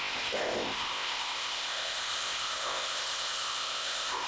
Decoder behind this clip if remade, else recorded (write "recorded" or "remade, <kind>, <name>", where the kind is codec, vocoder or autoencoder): remade, codec, ZipCodec